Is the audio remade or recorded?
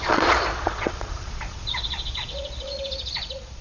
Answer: remade